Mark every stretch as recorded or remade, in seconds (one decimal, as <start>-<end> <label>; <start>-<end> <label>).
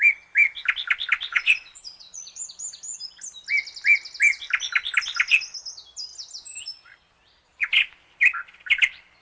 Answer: 0.0-1.3 recorded; 1.3-2.4 remade; 2.4-9.2 recorded